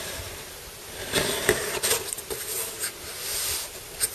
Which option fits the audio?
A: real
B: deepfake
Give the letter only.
B